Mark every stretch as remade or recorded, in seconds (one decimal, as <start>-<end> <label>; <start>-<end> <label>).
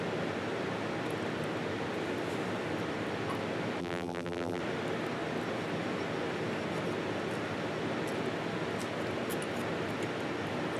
0.0-3.8 recorded; 3.8-4.6 remade; 4.6-10.8 recorded